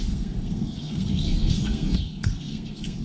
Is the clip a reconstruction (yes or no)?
yes